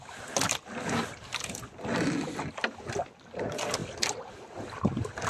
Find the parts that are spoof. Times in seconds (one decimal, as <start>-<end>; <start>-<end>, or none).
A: none

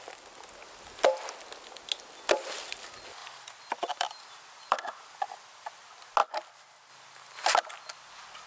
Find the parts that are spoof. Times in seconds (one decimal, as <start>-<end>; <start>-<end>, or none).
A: 3.2-5.8

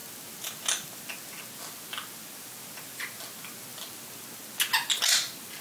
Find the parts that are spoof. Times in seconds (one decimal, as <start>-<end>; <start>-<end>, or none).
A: none

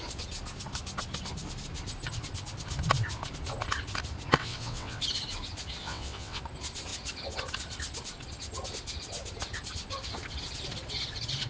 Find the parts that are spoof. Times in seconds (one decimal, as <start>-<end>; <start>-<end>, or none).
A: 4.4-5.0; 5.8-6.4

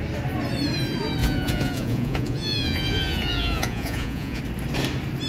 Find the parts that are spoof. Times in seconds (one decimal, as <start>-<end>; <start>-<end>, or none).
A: 1.2-4.4

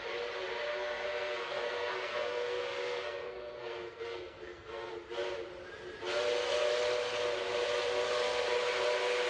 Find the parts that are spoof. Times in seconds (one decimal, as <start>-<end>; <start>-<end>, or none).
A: 0.7-4.9